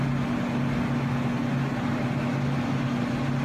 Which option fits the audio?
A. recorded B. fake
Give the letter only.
A